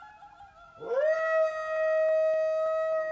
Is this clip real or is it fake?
real